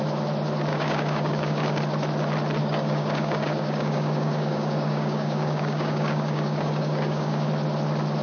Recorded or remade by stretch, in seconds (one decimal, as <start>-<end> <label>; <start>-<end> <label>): 0.0-0.7 recorded; 0.7-1.8 remade; 1.8-2.6 recorded; 2.6-7.5 remade; 7.5-8.2 recorded